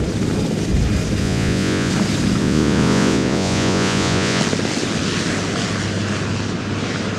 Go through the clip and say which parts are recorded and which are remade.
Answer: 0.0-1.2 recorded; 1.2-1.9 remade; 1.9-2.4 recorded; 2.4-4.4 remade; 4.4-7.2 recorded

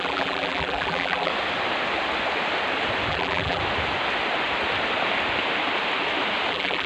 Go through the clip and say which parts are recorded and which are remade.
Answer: 0.0-1.3 remade; 1.3-3.1 recorded; 3.1-3.6 remade; 3.6-6.5 recorded; 6.5-6.9 remade